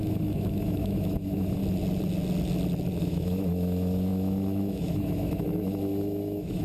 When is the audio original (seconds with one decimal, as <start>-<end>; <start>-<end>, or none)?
1.6-3.0